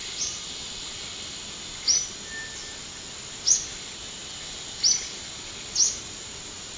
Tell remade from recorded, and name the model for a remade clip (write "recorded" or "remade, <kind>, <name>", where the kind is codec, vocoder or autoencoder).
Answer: recorded